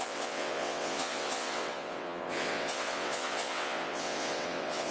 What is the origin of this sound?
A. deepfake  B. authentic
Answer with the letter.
A